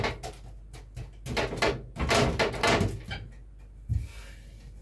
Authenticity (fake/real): real